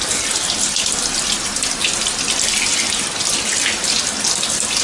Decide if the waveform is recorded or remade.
recorded